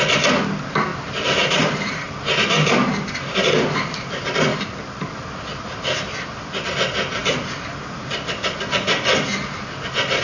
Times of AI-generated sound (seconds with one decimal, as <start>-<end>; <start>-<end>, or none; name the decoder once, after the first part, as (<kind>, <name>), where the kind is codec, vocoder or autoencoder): 0.9-2.7 (vocoder, BigVGAN v2); 4.5-5.1